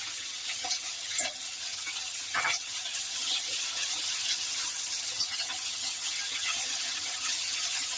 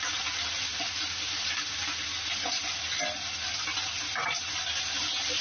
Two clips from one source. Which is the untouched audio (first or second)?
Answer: second